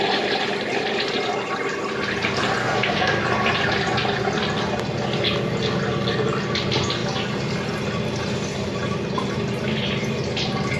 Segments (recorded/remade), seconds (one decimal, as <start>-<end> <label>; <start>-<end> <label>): 0.0-2.6 recorded; 2.6-3.2 remade; 3.2-10.8 recorded